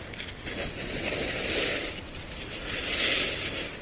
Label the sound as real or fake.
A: real